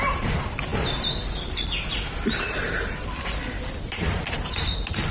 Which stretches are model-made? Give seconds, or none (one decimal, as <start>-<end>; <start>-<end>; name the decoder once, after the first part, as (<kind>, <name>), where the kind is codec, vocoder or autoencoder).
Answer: 0.0-0.7 (vocoder, BigVGAN v2); 3.8-5.1